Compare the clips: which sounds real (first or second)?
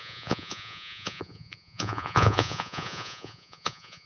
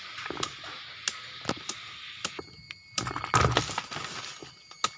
second